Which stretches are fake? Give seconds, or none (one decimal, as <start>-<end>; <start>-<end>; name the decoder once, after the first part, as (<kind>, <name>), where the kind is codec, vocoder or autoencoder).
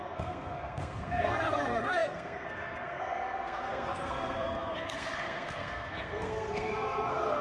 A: 0.0-7.4 (codec, SNAC)